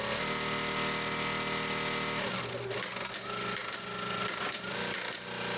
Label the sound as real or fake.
real